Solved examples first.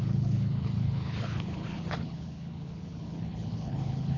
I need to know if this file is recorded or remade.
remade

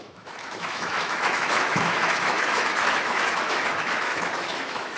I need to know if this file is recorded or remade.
remade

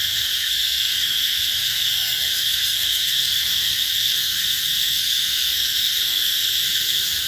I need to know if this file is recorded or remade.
remade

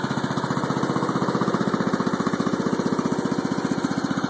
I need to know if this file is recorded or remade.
recorded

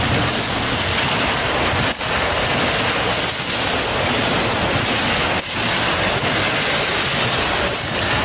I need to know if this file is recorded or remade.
recorded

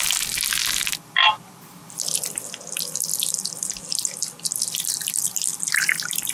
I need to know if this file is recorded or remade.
recorded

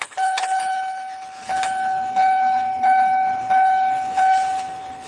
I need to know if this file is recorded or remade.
remade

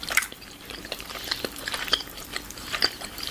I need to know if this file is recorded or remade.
remade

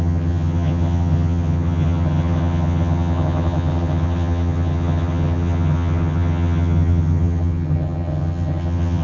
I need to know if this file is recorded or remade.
remade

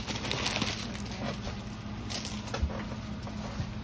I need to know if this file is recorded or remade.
recorded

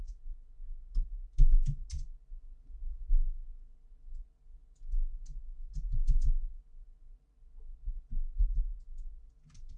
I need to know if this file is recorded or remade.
recorded